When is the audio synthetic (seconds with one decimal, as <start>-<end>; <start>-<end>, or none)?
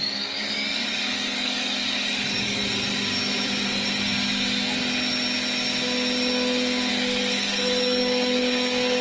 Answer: 0.0-2.6; 6.9-9.0